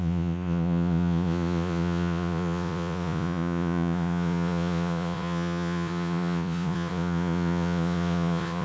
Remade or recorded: remade